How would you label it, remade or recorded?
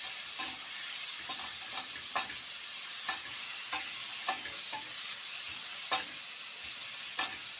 recorded